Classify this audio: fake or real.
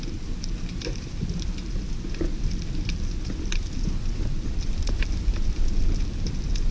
real